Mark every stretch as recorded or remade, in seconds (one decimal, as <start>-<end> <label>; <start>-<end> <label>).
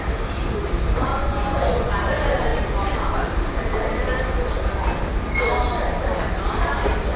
0.0-1.1 recorded; 1.1-1.9 remade; 1.9-7.2 recorded